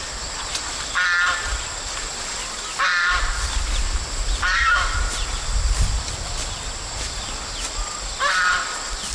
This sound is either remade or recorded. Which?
recorded